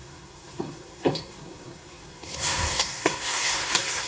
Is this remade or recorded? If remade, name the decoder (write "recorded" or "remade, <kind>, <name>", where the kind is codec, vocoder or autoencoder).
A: remade, codec, SNAC